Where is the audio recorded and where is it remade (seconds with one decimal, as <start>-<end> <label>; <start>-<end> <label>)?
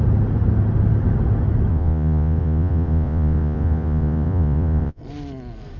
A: 0.0-1.7 recorded; 1.7-5.0 remade; 5.0-5.8 recorded